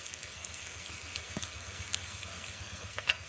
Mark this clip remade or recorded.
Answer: remade